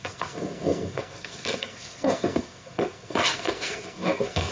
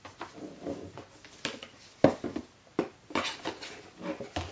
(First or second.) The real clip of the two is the second